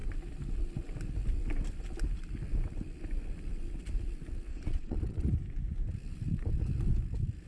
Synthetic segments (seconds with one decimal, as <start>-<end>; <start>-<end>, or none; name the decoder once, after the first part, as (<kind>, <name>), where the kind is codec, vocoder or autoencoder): 4.5-5.3 (vocoder, Vocos)